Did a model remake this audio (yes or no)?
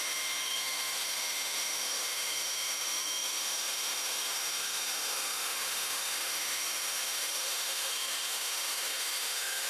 yes